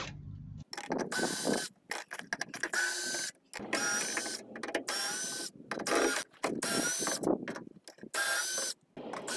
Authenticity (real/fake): real